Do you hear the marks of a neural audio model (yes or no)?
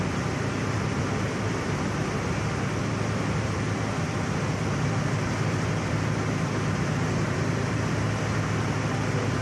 no